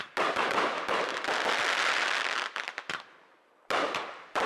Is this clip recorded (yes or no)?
yes